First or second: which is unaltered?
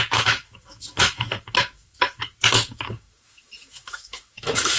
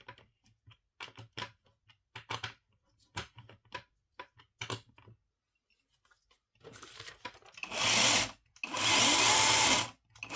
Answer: second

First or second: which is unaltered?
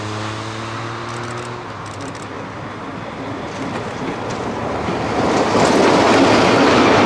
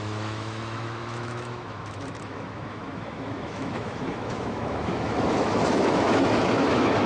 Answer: first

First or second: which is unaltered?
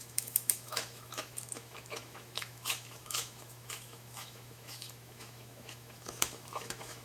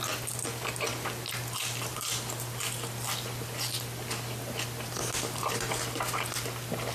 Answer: second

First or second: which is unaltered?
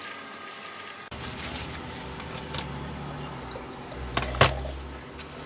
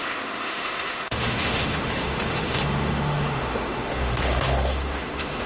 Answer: first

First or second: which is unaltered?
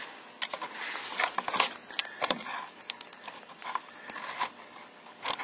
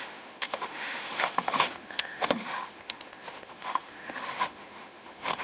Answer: first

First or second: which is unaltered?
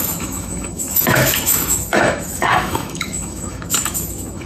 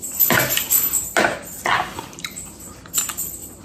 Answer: second